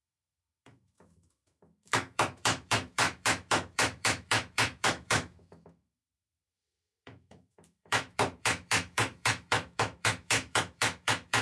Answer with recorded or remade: remade